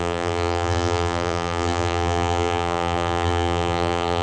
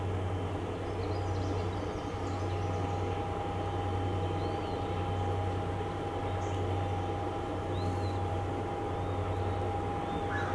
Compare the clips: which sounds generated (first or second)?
first